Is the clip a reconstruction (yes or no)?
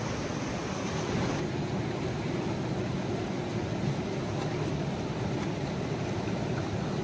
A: no